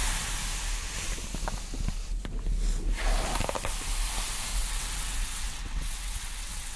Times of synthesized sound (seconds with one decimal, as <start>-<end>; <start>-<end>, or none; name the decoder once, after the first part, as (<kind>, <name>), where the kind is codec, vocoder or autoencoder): 4.5-6.8 (vocoder, WaveNeXt)